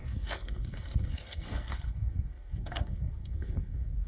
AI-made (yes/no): yes